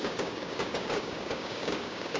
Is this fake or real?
fake